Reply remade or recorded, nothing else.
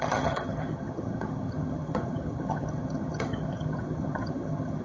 remade